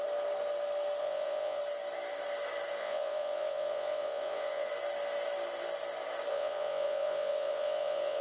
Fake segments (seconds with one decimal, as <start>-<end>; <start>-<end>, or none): 1.0-1.6; 2.8-4.7; 6.3-8.2